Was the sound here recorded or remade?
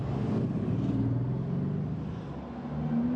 recorded